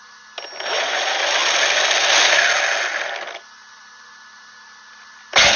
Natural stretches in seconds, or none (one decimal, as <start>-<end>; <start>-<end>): 0.0-5.6